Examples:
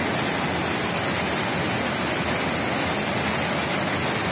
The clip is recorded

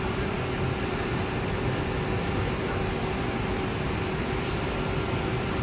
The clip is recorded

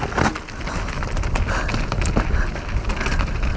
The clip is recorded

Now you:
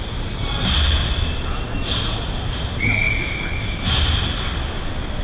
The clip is recorded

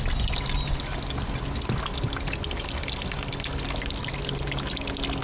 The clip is recorded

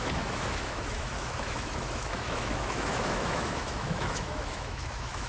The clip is remade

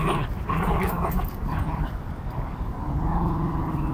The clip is remade